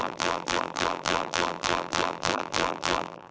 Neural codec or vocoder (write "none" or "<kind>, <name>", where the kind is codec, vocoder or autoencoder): vocoder, BigVGAN v2